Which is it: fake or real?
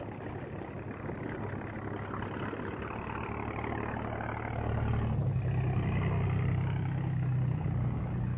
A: real